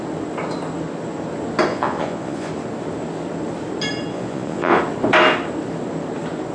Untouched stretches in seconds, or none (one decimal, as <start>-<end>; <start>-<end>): 0.0-1.7; 2.5-4.1; 4.8-6.5